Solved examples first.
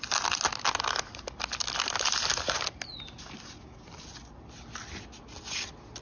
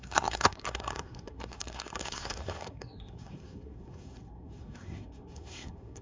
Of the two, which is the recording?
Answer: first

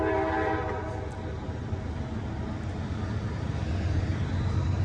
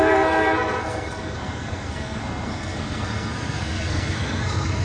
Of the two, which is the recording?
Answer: first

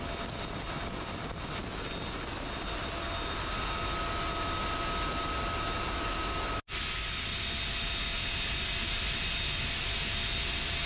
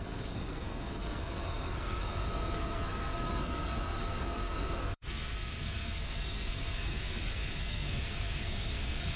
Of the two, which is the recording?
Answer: first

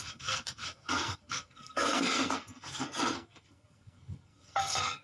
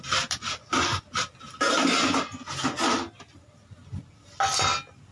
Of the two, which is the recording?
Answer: second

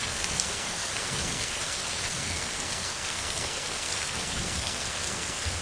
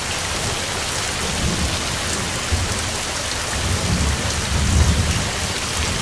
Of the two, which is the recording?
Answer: second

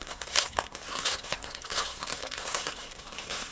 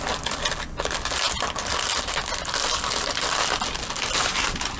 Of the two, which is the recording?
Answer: second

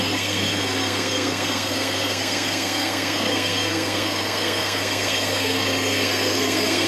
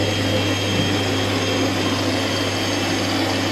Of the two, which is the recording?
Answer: second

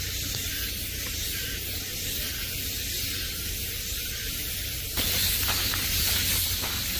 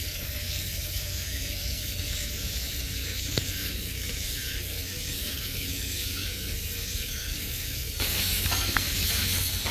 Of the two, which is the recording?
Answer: first